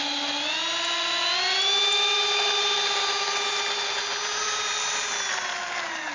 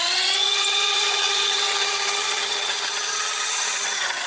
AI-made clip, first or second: second